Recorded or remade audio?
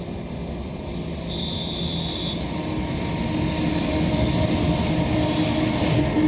recorded